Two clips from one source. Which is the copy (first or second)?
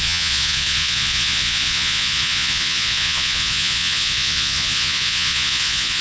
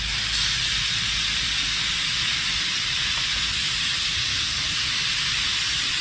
first